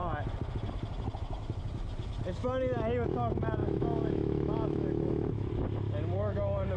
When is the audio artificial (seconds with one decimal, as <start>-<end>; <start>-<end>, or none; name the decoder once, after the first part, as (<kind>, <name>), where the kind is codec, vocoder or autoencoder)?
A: 3.6-5.5 (autoencoder, DAC-VAE)